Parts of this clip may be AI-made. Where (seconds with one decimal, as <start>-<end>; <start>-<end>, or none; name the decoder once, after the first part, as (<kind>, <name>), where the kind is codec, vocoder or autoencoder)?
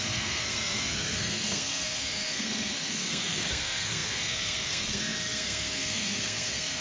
0.0-6.8 (codec, SNAC)